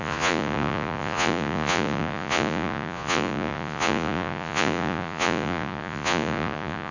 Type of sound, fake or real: fake